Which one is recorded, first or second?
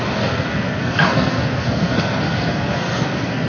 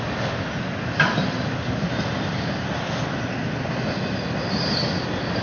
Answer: second